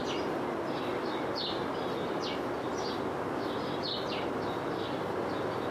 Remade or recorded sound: recorded